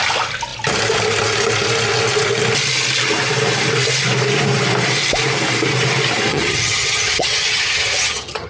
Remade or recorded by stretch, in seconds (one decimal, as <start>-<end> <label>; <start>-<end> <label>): 0.0-6.3 recorded; 6.3-8.5 remade